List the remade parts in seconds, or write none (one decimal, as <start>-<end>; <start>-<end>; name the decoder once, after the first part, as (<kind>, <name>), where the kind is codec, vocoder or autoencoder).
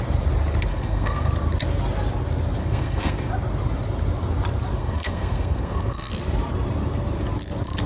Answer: 0.7-1.3 (codec, SNAC); 2.6-3.3; 4.8-6.1